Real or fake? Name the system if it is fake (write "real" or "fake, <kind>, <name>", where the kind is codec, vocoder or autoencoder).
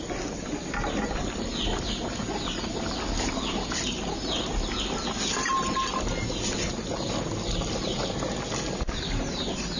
real